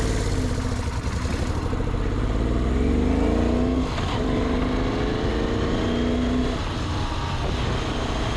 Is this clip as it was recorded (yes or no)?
yes